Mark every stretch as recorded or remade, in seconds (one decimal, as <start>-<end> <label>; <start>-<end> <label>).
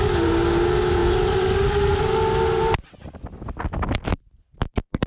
0.0-5.1 recorded